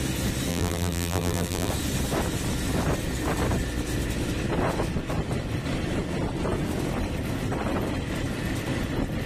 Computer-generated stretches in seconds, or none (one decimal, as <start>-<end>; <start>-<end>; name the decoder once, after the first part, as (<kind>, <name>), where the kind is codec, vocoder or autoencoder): 0.5-1.7 (vocoder, BigVGAN v2)